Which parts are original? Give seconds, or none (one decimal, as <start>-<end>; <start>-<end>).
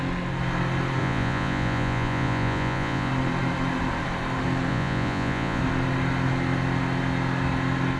0.0-1.0; 3.1-4.7; 5.6-8.0